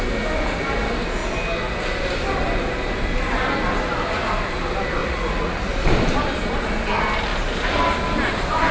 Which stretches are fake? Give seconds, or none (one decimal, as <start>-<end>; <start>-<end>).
5.0-5.7